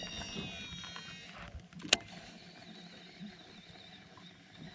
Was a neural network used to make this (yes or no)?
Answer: no